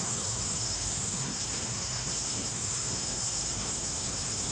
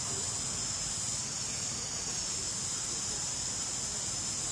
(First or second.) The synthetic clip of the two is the first